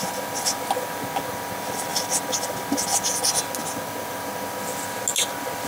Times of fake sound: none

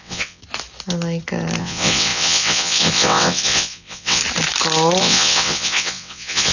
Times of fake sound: 0.0-0.4; 1.6-4.2; 5.0-6.5

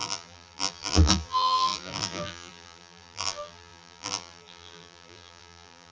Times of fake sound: 0.0-5.9

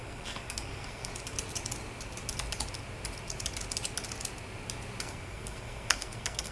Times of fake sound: 0.0-1.1; 5.0-6.5

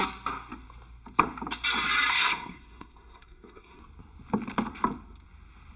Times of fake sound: 2.1-3.8

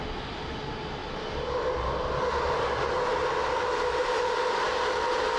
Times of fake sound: none

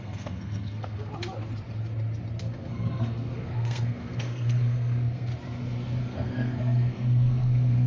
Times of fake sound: 0.0-1.1; 2.4-5.3; 6.0-7.9